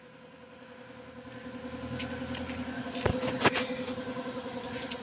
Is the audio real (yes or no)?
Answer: yes